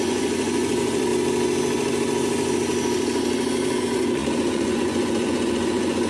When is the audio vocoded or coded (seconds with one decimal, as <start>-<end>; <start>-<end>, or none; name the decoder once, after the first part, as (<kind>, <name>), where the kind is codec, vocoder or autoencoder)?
0.0-1.1 (vocoder, Vocos); 3.8-6.1